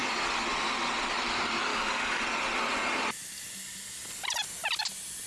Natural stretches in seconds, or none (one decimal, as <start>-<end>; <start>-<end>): 0.0-1.7; 2.2-5.3